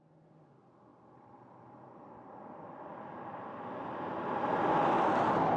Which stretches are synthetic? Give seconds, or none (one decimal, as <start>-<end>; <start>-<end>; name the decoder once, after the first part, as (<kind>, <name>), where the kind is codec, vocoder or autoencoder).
0.9-3.7 (vocoder, BigVGAN v2)

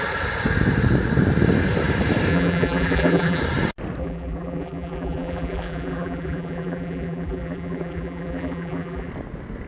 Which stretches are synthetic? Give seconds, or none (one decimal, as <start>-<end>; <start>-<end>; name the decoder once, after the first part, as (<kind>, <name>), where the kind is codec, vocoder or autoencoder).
2.3-3.4 (vocoder, BigVGAN v2); 4.0-9.1

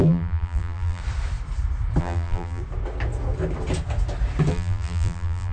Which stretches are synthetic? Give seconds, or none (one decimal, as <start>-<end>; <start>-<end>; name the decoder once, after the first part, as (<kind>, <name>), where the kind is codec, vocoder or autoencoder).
0.0-1.0 (vocoder, BigVGAN v2); 2.0-2.6; 4.5-5.5

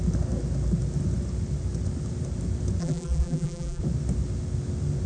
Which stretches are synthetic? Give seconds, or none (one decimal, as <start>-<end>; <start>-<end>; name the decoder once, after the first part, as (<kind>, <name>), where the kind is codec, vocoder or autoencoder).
2.8-3.8 (vocoder, BigVGAN v2)

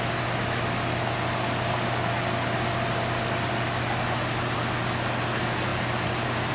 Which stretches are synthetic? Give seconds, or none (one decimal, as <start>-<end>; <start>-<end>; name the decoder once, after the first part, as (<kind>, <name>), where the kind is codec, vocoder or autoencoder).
none

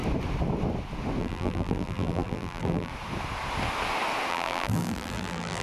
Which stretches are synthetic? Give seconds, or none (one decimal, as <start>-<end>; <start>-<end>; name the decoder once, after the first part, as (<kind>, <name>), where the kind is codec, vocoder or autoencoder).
1.2-2.9 (vocoder, BigVGAN v2); 4.3-5.6

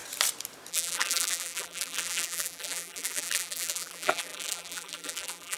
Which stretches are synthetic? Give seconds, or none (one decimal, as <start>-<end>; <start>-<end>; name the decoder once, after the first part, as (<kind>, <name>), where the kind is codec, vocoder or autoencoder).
0.7-5.6 (vocoder, BigVGAN v2)

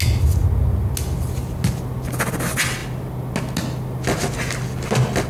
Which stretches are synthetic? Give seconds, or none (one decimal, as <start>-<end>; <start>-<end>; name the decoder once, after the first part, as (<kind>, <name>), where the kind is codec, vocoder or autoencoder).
none